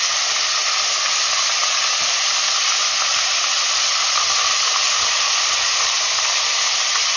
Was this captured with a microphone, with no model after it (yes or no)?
yes